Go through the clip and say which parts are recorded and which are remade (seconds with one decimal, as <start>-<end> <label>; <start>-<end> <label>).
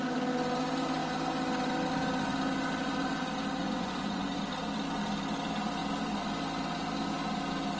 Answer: 0.0-3.6 recorded; 3.6-4.4 remade; 4.4-7.8 recorded